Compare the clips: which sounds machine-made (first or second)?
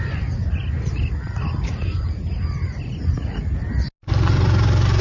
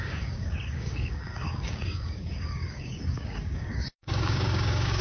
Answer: second